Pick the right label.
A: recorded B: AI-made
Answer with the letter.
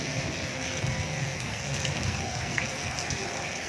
B